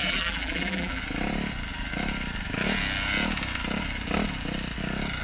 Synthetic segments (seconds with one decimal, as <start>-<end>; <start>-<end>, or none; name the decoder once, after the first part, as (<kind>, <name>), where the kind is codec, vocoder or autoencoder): 0.0-1.0 (vocoder, BigVGAN v2)